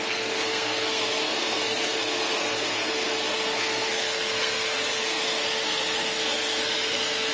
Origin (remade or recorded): remade